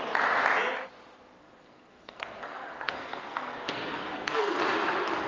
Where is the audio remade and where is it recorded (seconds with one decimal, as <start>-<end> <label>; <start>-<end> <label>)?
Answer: 0.0-1.4 recorded; 1.4-4.6 remade; 4.6-5.3 recorded